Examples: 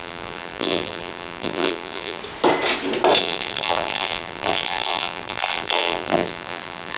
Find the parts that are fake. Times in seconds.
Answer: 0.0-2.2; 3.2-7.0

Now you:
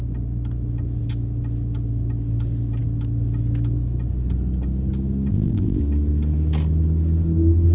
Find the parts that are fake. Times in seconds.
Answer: 5.3-5.8

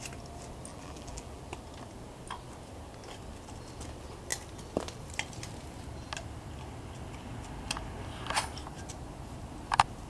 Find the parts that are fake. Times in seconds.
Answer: 0.7-1.4

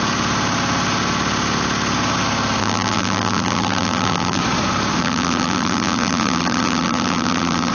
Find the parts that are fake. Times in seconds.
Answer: 2.6-4.4; 5.0-7.7